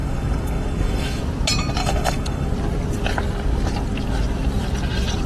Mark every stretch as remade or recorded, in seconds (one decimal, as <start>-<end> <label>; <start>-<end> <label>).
0.0-1.2 remade; 1.2-1.8 recorded; 1.8-2.5 remade; 2.5-5.3 recorded